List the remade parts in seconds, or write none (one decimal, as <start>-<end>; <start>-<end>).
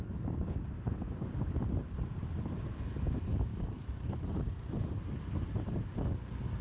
3.5-4.2